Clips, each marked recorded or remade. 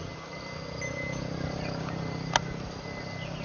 recorded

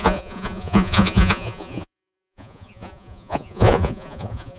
remade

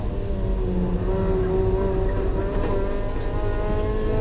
recorded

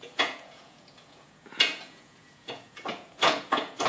remade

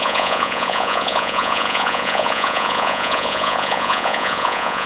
remade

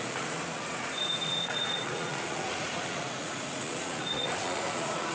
remade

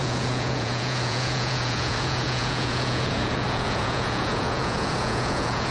remade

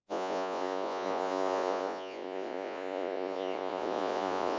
remade